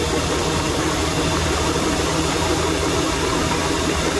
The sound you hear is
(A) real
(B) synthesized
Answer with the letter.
A